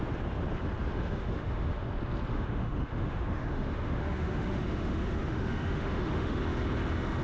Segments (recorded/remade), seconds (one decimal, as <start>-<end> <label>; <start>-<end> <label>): 0.0-0.9 recorded; 0.9-1.9 remade; 1.9-2.3 recorded; 2.3-6.4 remade; 6.4-7.2 recorded